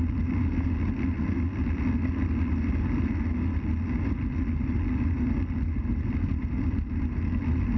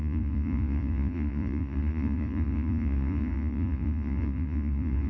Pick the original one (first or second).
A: first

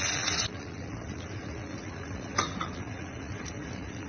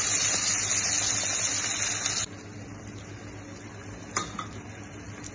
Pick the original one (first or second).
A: second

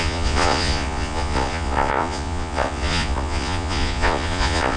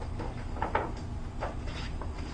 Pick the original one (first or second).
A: second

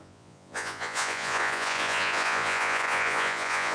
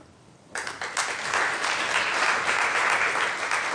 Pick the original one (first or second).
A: second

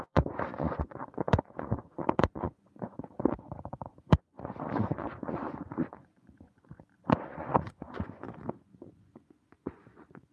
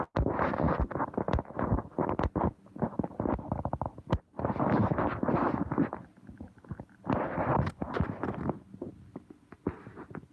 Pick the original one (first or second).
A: second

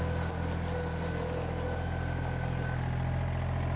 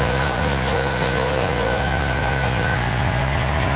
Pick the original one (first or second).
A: first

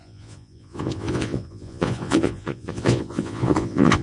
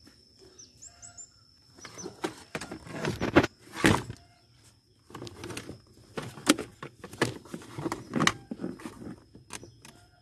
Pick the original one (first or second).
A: second